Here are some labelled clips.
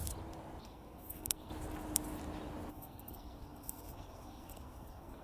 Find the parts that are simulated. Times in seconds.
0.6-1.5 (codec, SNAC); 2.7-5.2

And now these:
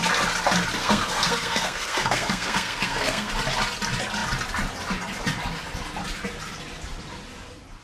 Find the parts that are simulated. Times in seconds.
0.8-3.3 (codec, SNAC)

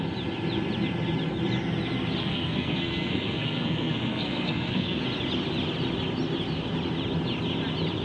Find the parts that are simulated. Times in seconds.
2.2-5.0 (codec, SNAC)

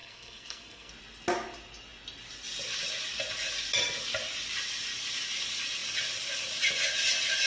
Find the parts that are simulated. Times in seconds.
0.0-0.9 (codec, SNAC)

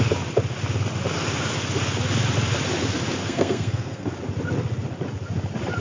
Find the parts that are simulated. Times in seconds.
3.2-4.1 (codec, SNAC)